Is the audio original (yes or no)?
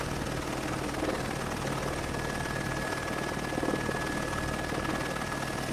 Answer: yes